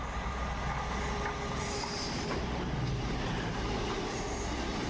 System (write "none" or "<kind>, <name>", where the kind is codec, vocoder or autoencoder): none